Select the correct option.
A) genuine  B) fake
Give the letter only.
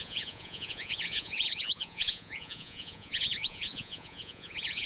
B